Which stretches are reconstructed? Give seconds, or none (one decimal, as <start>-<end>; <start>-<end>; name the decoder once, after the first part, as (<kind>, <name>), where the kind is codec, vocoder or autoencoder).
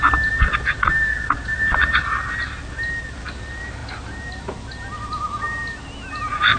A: none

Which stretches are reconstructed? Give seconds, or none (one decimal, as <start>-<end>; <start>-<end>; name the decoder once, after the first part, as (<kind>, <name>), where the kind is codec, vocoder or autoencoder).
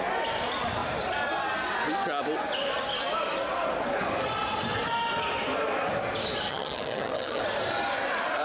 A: 6.5-7.4 (vocoder, HiFi-GAN)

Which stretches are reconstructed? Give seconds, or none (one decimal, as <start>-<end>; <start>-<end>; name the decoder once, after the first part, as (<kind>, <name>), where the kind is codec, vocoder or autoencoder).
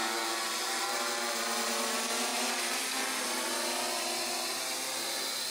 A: none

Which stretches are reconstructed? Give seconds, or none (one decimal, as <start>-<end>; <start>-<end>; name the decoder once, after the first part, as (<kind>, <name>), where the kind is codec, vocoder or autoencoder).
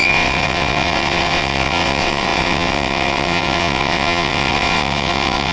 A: 0.0-5.5 (vocoder, WaveNeXt)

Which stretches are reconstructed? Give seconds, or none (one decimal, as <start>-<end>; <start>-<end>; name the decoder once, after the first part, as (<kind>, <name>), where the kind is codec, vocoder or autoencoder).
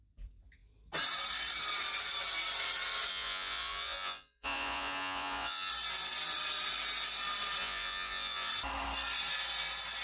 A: 3.1-5.7 (vocoder, Vocos); 7.6-8.5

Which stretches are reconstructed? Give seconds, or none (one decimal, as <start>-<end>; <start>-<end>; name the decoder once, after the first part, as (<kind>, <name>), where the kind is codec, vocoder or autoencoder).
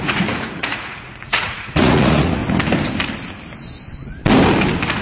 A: 0.0-2.4 (vocoder, Vocos)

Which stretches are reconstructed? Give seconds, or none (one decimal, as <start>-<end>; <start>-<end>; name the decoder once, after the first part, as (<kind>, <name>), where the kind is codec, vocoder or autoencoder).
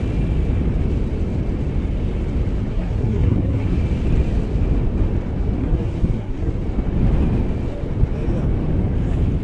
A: 2.7-3.8 (codec, SNAC); 5.6-6.5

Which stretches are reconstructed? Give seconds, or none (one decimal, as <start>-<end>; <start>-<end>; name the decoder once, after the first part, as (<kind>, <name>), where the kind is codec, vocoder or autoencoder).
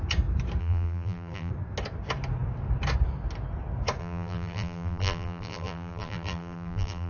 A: 0.6-1.5 (vocoder, BigVGAN v2); 4.0-7.1